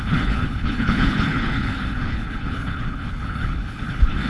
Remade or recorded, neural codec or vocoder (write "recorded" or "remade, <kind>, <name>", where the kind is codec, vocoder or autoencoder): remade, codec, HILCodec